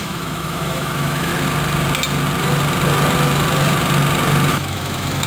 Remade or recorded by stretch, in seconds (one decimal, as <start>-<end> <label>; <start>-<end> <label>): 0.0-1.3 remade; 1.3-4.5 recorded; 4.5-5.3 remade